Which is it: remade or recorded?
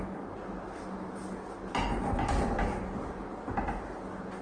recorded